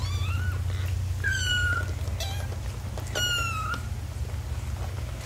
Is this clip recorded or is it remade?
recorded